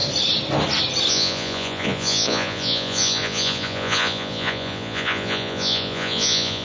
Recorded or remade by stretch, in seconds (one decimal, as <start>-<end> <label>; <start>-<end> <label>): 0.0-1.1 recorded; 1.1-6.6 remade